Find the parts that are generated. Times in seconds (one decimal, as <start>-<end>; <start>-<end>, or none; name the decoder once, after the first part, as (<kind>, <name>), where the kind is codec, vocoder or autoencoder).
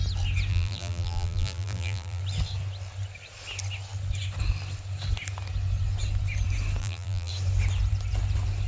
0.5-2.2 (vocoder, BigVGAN v2); 6.8-7.3